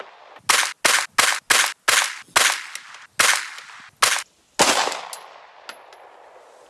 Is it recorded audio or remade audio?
recorded